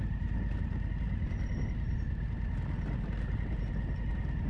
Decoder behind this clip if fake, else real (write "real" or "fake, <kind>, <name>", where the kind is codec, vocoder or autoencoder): real